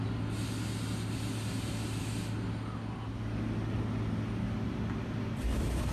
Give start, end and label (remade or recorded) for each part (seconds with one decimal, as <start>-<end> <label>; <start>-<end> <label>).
0.0-5.9 recorded